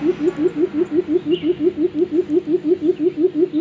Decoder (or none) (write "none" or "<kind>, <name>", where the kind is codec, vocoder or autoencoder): none